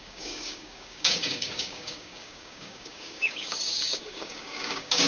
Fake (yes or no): yes